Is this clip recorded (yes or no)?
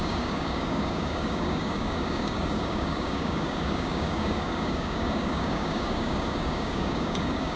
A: no